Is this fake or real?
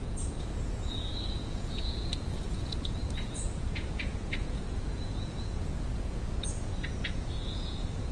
fake